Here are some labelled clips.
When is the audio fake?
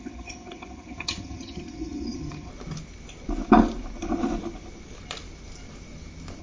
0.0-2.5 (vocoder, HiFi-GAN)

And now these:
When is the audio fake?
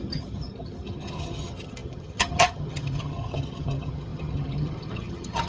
0.0-5.5 (vocoder, HiFi-GAN)